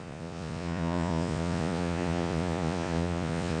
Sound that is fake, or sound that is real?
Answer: fake